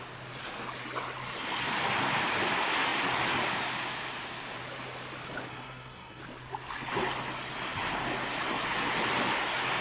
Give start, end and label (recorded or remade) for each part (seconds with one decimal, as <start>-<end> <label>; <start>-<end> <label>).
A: 0.0-5.5 recorded; 5.5-6.2 remade; 6.2-9.8 recorded